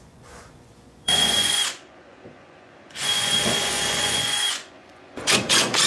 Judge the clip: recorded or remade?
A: remade